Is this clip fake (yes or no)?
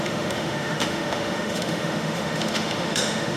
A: yes